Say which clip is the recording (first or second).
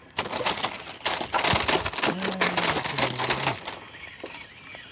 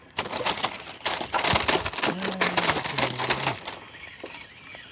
first